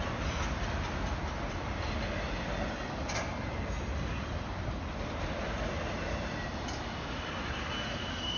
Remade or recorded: recorded